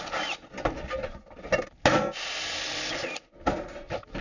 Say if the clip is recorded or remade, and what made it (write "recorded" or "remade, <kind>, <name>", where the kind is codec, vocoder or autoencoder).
recorded